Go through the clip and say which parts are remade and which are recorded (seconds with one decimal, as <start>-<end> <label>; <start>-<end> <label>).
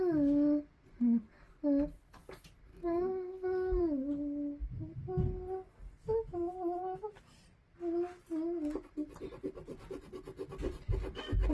0.0-2.7 recorded; 2.7-3.8 remade; 3.8-11.5 recorded